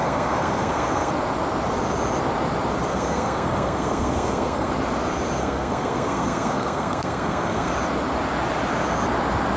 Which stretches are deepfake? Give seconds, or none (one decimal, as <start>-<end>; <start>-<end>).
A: 0.0-1.1; 2.9-4.7; 5.4-7.7